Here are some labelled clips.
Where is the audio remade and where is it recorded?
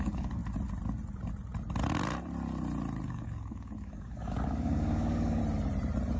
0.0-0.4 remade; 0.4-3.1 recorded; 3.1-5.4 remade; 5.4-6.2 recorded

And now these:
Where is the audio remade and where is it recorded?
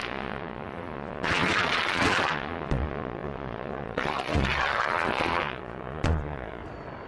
0.0-6.6 remade; 6.6-7.1 recorded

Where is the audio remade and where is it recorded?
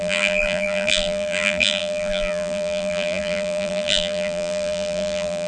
0.0-5.5 remade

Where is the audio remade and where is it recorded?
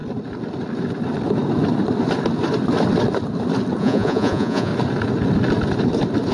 0.0-3.8 recorded; 3.8-4.7 remade; 4.7-6.3 recorded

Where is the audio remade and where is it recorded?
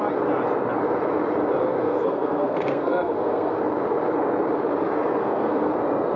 0.0-1.8 recorded; 1.8-3.6 remade; 3.6-5.2 recorded; 5.2-5.7 remade; 5.7-6.2 recorded